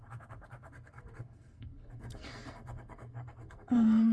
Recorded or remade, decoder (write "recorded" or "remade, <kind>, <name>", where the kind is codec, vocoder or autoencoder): remade, codec, SNAC